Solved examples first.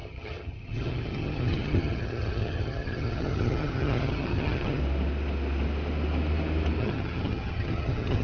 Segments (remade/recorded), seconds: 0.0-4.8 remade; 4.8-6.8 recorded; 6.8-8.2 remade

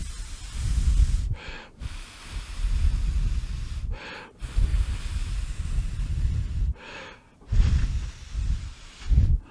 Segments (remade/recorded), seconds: 0.0-9.5 recorded

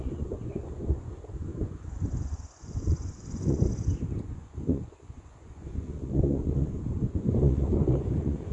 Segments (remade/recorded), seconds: 0.0-3.6 remade; 3.6-4.2 recorded; 4.2-8.5 remade

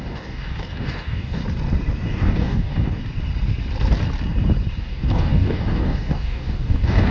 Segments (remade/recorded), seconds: 0.0-1.4 remade; 1.4-2.1 recorded; 2.1-3.0 remade; 3.0-4.8 recorded; 4.8-7.1 remade